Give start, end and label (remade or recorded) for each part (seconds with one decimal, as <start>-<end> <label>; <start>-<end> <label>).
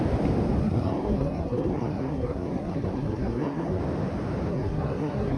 0.0-0.6 recorded; 0.6-3.8 remade; 3.8-4.5 recorded; 4.5-5.4 remade